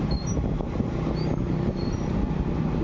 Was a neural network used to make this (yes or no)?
no